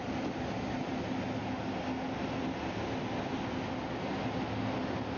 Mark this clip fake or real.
real